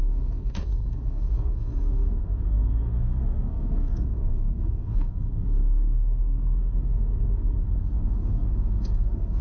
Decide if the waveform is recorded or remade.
remade